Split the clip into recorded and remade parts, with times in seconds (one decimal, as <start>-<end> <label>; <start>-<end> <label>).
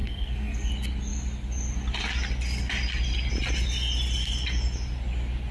0.0-0.7 remade; 0.7-5.5 recorded